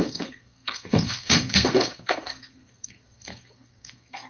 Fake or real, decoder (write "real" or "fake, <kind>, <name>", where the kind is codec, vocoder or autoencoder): fake, codec, SNAC